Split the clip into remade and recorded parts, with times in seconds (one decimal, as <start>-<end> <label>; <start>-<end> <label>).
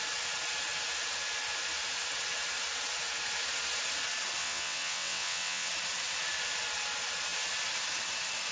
0.0-4.4 recorded; 4.4-5.7 remade; 5.7-8.5 recorded